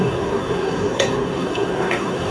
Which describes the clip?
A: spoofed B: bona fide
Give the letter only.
A